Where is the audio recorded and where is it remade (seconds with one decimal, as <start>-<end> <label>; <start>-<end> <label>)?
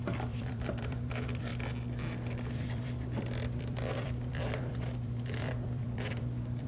0.0-1.5 remade; 1.5-2.5 recorded; 2.5-6.7 remade